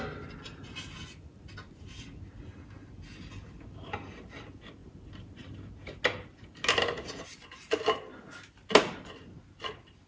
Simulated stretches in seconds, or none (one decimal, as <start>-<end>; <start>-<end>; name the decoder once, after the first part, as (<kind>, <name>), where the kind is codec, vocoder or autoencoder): none